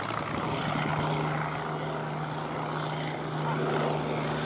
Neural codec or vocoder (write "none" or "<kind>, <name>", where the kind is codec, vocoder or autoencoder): none